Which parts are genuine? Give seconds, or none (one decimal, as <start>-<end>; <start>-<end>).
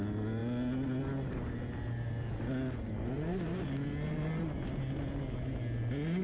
0.0-6.2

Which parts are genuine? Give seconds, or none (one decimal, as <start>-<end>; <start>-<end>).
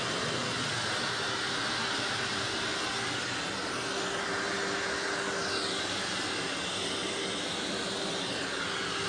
0.0-9.1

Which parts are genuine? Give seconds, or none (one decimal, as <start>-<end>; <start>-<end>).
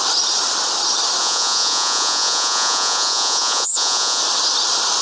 0.0-1.2; 4.2-5.0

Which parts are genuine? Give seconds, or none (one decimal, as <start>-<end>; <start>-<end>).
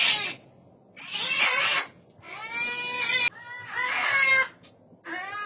0.0-5.5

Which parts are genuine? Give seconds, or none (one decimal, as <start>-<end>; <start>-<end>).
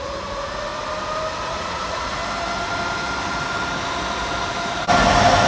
0.7-1.4; 2.2-5.5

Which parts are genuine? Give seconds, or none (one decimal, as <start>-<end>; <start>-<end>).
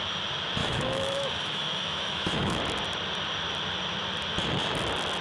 0.0-0.6; 2.6-5.2